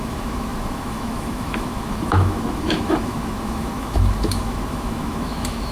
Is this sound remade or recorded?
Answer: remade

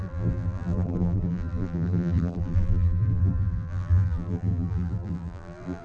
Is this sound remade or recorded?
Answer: remade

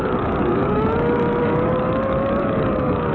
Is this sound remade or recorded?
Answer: remade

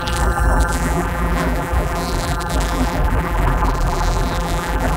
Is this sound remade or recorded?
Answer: remade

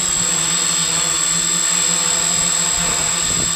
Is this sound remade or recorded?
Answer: recorded